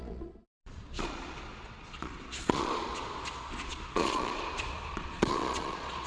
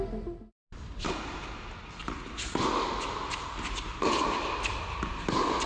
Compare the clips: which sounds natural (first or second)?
second